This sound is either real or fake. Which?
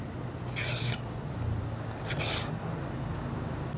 real